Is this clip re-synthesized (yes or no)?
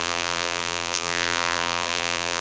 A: yes